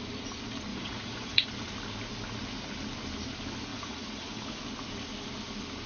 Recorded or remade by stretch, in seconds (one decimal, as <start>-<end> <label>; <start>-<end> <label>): 0.0-0.7 recorded; 0.7-1.5 remade; 1.5-3.7 recorded; 3.7-4.6 remade; 4.6-5.9 recorded